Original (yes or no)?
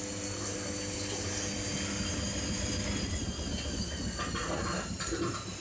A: yes